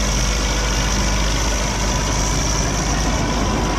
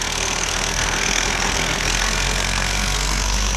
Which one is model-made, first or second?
second